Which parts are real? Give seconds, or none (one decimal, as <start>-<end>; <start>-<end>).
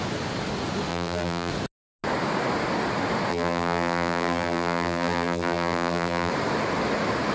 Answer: 0.0-0.9; 1.5-3.3; 6.3-7.3